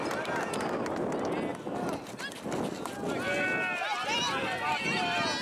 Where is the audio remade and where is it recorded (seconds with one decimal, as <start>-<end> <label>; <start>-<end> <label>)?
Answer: 0.0-5.4 recorded